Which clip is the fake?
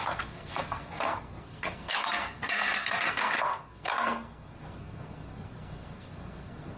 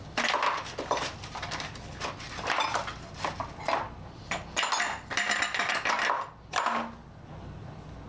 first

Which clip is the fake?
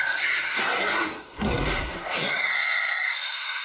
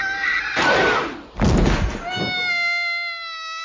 first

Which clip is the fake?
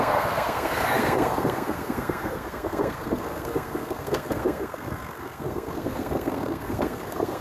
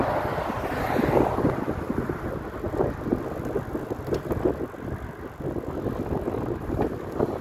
first